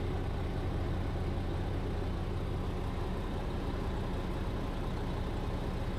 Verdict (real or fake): real